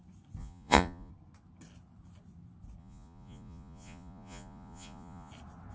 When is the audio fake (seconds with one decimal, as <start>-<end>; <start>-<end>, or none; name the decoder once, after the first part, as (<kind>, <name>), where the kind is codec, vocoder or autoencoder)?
0.4-1.1 (vocoder, Vocos); 2.8-5.3